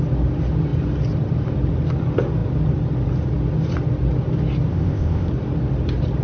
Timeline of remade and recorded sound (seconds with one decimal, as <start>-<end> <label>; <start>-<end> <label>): 0.0-4.7 recorded; 4.7-5.3 remade; 5.3-6.2 recorded